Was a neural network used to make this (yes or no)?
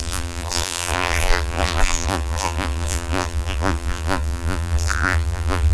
yes